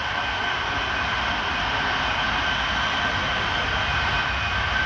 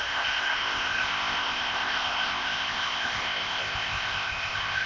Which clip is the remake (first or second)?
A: second